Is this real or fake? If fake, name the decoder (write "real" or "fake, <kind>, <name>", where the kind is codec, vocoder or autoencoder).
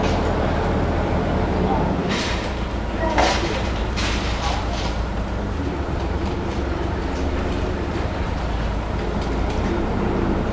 fake, vocoder, BigVGAN v2